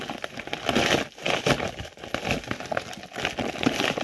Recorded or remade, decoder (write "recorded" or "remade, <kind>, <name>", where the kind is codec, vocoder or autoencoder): remade, vocoder, BigVGAN v2